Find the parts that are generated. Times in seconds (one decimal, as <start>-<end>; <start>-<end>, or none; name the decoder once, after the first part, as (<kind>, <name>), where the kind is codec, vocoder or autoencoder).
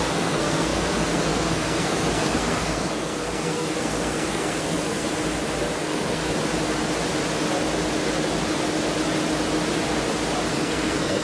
0.0-5.1 (codec, SNAC); 5.8-6.2; 10.5-11.2